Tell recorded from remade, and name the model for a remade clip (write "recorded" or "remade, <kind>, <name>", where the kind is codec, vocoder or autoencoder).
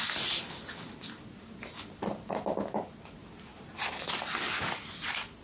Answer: recorded